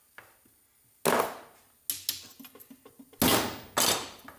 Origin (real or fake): real